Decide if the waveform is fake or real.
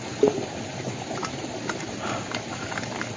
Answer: real